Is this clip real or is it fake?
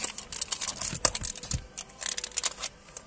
real